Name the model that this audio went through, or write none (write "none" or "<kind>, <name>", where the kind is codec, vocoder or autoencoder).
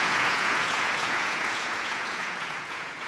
vocoder, Vocos